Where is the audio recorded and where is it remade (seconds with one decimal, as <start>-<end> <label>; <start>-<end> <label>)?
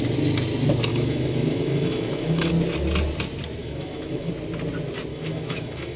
0.0-0.9 recorded; 0.9-2.5 remade; 2.5-3.6 recorded; 3.6-4.3 remade; 4.3-5.1 recorded; 5.1-6.0 remade